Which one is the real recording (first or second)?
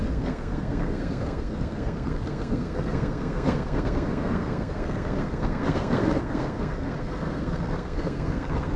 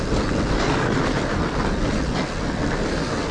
second